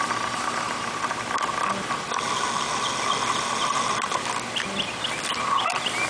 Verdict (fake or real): real